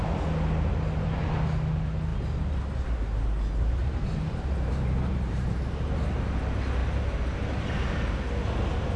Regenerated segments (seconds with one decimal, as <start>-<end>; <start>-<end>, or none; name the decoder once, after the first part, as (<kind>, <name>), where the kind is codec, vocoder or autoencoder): 3.8-5.7 (vocoder, BigVGAN v2); 6.8-7.9